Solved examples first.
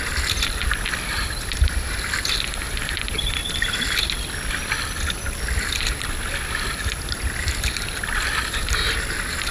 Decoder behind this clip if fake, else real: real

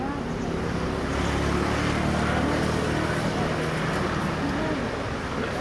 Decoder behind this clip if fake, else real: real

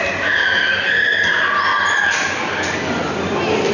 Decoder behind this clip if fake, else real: real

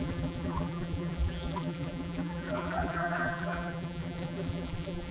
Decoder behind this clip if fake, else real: fake, vocoder, BigVGAN v2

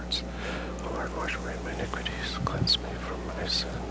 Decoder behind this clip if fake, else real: real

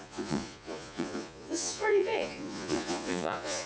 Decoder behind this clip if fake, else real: fake, vocoder, Vocos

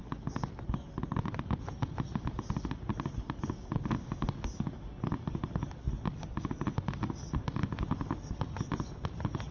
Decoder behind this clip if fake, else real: real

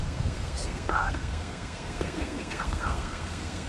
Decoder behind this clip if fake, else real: fake, codec, SNAC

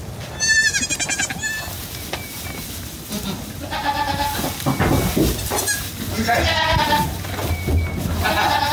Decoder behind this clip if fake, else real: real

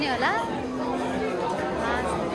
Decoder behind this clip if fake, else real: real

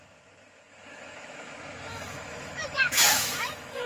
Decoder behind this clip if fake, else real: fake, autoencoder, DAC-VAE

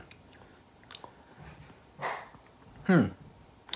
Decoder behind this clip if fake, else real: real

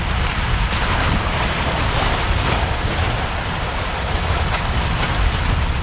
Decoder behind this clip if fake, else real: real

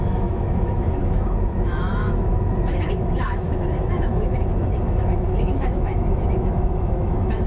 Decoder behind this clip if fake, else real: fake, autoencoder, DAC-VAE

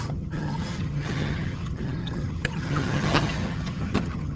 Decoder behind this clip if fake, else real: fake, vocoder, HiFi-GAN